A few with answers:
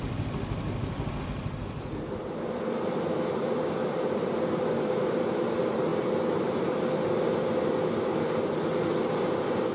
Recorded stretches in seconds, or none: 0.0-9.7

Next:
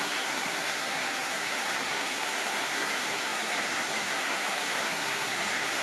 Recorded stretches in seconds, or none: none

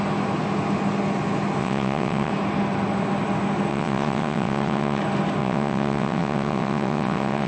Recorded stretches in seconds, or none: 0.0-1.6; 2.3-3.7; 5.0-5.4

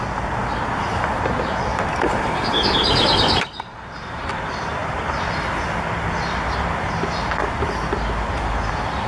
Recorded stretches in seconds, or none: 0.0-1.7; 4.3-9.1

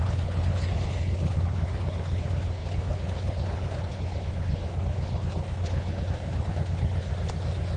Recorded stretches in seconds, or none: 7.1-7.8

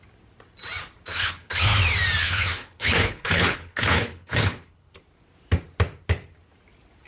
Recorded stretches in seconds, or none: 0.0-1.1; 1.8-2.2; 5.0-7.1